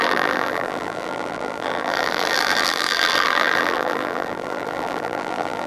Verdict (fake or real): fake